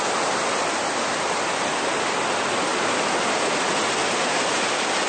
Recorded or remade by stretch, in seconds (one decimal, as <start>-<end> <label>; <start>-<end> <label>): 0.0-5.1 recorded